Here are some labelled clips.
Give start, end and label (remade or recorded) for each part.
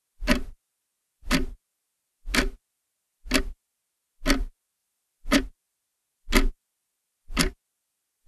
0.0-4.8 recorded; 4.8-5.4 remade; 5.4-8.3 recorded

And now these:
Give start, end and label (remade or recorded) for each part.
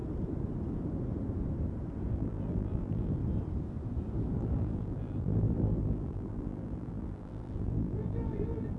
0.0-2.1 recorded; 2.1-3.2 remade; 3.2-4.4 recorded; 4.4-8.8 remade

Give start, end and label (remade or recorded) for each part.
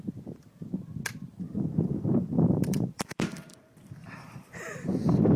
0.0-1.3 recorded; 1.3-3.6 remade; 3.6-4.0 recorded; 4.0-5.4 remade